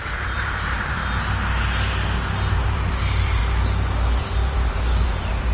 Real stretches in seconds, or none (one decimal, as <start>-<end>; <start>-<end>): 1.0-2.5; 3.4-4.2